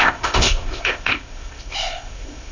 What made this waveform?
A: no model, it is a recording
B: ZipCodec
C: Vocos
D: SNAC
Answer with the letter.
B